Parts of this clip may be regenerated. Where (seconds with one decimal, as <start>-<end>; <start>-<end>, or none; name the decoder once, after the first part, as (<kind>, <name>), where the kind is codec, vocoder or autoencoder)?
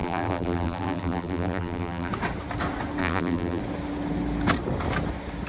0.0-2.1 (vocoder, BigVGAN v2); 3.0-3.6